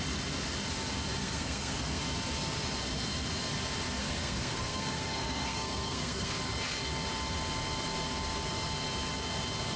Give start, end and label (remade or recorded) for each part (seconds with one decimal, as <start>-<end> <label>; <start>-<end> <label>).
0.0-1.2 recorded; 1.2-2.0 remade; 2.0-4.0 recorded; 4.0-6.3 remade; 6.3-9.8 recorded